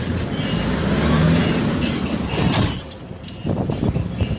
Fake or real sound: real